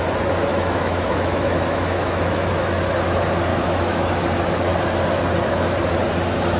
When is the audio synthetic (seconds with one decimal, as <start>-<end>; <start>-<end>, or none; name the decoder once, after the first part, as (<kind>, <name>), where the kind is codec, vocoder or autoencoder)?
0.5-2.5 (autoencoder, DAC-VAE); 3.5-4.1